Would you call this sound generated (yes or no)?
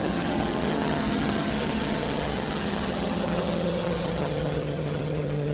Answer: yes